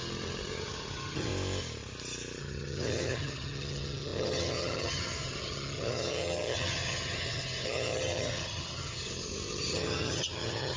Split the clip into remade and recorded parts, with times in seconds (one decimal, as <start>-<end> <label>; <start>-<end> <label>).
0.0-1.3 remade; 1.3-2.4 recorded; 2.4-10.8 remade